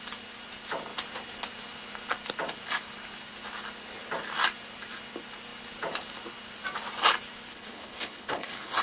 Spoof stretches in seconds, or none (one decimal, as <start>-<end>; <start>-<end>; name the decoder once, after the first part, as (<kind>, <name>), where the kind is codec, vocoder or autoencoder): 7.5-8.8 (codec, HILCodec)